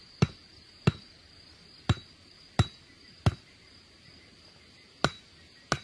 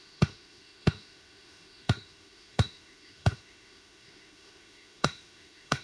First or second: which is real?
first